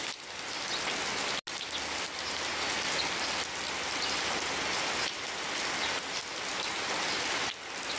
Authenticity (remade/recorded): recorded